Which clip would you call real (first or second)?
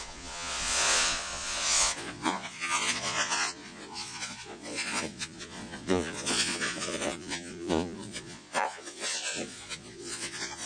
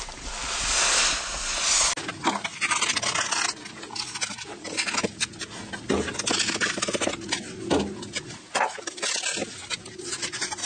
second